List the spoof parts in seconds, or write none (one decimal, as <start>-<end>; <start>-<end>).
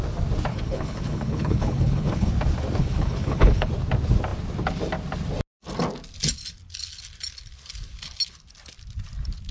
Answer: 0.5-2.3; 2.8-3.7